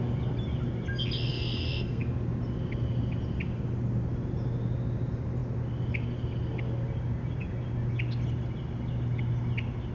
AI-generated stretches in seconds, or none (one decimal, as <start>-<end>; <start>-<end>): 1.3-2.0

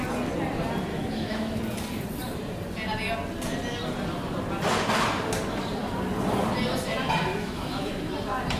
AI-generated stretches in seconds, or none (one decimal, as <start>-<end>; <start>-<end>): 0.9-1.6; 7.3-8.1

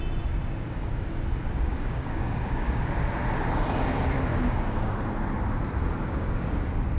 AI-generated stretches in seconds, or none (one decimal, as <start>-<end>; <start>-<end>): 1.7-2.8; 4.3-4.9; 6.0-7.0

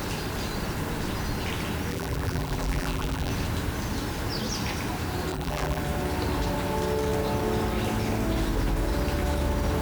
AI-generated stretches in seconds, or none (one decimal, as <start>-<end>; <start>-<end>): 1.9-3.3; 5.3-5.8